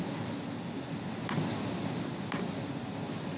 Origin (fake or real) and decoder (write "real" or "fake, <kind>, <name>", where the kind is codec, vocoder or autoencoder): real